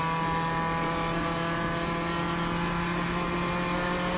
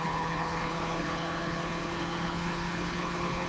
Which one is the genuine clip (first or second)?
first